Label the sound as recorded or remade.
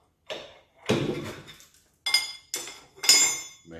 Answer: recorded